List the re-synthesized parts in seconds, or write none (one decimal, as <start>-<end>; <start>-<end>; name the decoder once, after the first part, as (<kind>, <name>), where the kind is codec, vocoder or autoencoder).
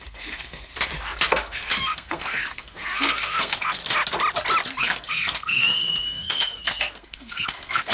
0.0-0.7 (codec, SNAC); 1.3-3.8; 4.8-7.9